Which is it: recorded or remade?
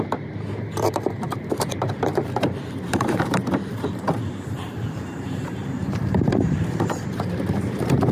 remade